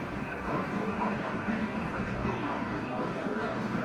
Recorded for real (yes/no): no